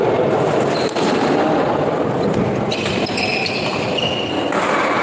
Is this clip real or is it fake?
real